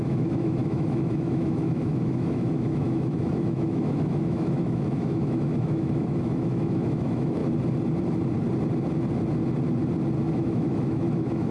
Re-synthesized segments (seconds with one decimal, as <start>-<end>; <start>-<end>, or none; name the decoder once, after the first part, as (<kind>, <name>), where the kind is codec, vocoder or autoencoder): 0.0-7.4 (autoencoder, DAC-VAE); 10.2-11.5